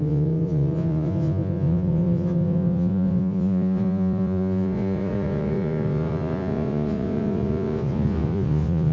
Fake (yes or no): yes